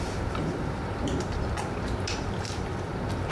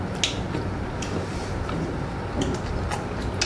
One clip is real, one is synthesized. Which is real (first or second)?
second